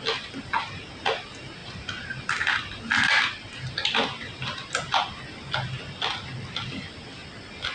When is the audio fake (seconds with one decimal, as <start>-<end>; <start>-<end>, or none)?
none